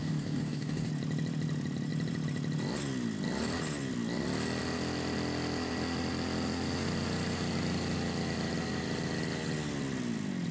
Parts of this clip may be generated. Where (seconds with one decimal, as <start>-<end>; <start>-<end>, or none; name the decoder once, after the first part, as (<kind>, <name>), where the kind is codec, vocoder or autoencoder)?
0.0-0.9 (codec, DAC)